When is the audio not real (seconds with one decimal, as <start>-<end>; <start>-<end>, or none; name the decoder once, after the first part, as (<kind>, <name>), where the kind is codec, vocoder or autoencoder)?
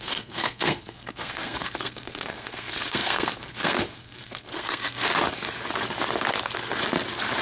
0.0-5.1 (codec, SNAC)